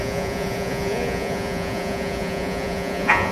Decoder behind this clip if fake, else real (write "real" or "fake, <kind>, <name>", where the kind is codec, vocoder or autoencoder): fake, vocoder, Vocos